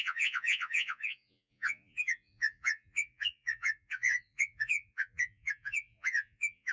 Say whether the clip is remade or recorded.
remade